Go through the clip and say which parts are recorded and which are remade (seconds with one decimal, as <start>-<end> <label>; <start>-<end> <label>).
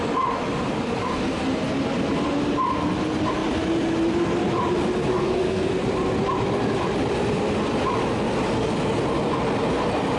0.0-5.1 recorded; 5.1-5.7 remade; 5.7-10.2 recorded